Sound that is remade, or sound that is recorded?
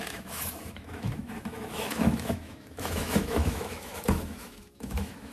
remade